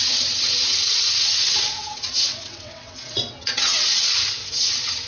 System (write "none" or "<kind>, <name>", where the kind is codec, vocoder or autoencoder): vocoder, WaveNeXt